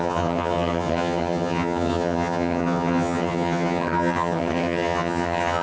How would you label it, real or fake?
fake